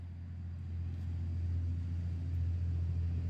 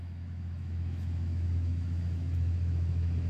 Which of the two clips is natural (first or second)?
first